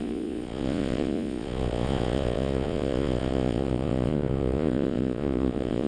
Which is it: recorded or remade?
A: remade